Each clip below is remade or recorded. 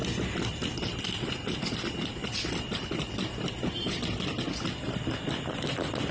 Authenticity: recorded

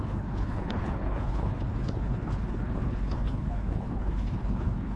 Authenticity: remade